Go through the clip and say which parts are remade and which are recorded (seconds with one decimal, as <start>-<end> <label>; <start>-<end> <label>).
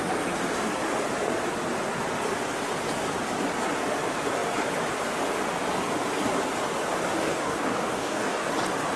0.0-7.2 recorded; 7.2-8.5 remade; 8.5-9.0 recorded